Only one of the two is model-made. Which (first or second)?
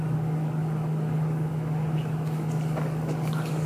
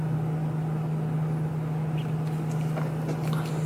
first